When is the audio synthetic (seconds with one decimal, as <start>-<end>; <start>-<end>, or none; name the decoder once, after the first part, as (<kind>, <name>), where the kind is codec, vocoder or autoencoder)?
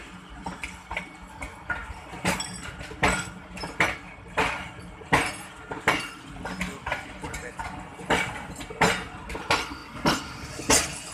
none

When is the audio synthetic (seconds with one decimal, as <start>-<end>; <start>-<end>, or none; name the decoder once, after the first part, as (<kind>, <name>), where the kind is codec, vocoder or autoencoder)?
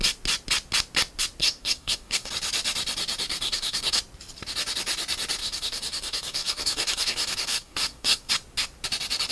1.4-2.3 (codec, DAC); 3.3-4.0; 5.4-8.3